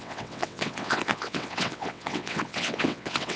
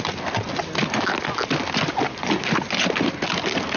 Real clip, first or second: second